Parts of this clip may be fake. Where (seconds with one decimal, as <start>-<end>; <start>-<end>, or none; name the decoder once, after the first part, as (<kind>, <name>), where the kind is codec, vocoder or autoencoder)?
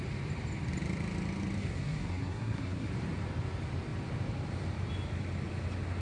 1.6-2.9 (codec, SNAC)